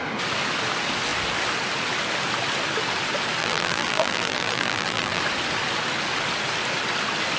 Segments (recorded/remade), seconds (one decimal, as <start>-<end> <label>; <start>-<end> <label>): 0.0-3.4 recorded; 3.4-5.2 remade; 5.2-7.4 recorded